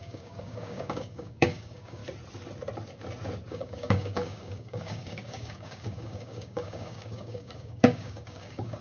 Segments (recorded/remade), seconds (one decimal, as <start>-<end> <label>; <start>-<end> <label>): 0.0-2.0 remade; 2.0-3.5 recorded; 3.5-8.8 remade

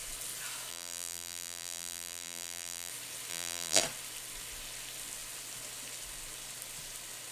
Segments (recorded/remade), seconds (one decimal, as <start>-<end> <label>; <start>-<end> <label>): 0.0-0.7 recorded; 0.7-2.9 remade; 2.9-3.3 recorded; 3.3-3.8 remade; 3.8-7.3 recorded

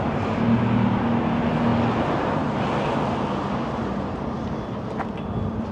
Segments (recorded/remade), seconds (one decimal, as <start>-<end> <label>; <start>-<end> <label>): 0.0-5.7 recorded

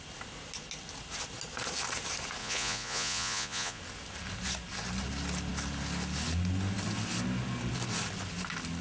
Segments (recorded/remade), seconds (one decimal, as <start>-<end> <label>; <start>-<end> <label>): 0.0-2.4 recorded; 2.4-3.8 remade; 3.8-8.8 recorded